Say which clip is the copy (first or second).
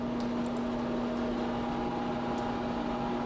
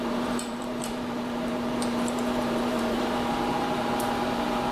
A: second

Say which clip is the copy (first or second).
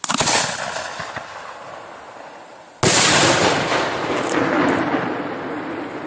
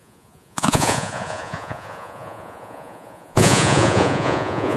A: second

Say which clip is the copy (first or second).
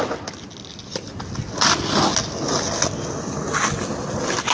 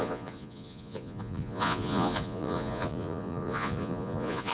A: second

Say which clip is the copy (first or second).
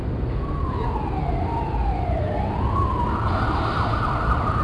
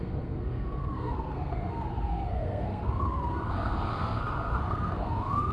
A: second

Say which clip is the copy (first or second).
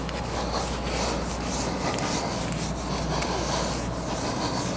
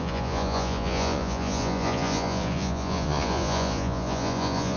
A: second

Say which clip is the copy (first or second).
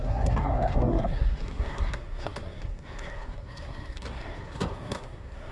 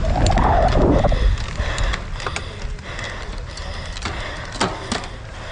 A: first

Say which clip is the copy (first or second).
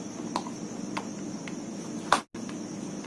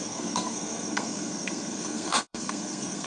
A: second